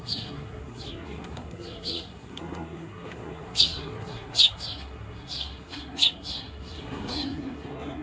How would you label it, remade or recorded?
remade